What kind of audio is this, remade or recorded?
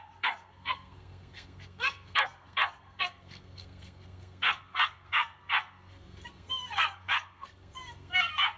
remade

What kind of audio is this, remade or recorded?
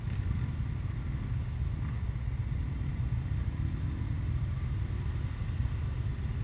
recorded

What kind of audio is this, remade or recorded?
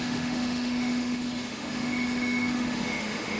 remade